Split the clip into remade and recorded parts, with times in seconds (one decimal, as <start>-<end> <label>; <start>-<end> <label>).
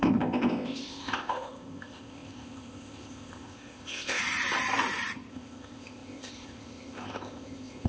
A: 0.0-4.2 remade; 4.2-5.3 recorded; 5.3-7.9 remade